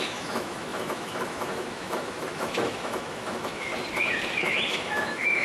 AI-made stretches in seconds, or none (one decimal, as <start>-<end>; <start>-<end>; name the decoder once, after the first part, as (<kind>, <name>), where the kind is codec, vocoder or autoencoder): 0.0-3.7 (autoencoder, DAC-VAE); 4.4-5.4